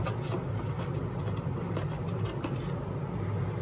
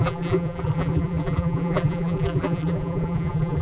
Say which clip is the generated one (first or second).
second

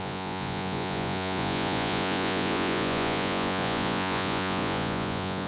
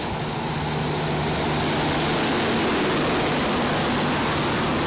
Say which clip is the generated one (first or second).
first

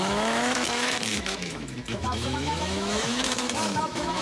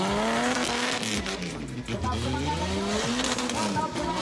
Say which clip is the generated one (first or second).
first